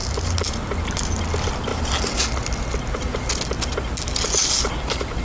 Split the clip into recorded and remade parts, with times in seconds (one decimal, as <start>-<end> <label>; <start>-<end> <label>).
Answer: 0.0-5.2 recorded